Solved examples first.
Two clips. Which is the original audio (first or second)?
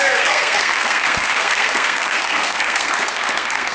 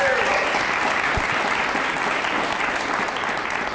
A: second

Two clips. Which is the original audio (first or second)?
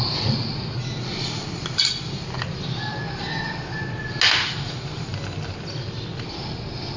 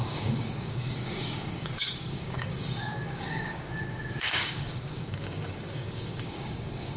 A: first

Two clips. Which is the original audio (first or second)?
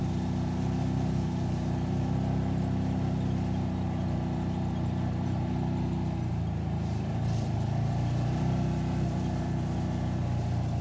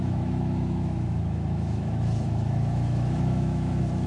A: first